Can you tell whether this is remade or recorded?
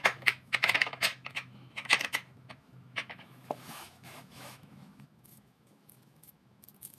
remade